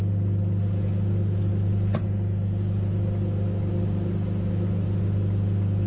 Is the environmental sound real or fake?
real